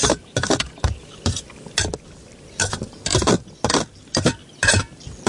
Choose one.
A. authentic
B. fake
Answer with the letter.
A